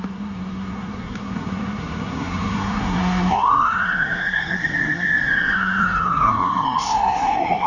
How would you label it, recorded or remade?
remade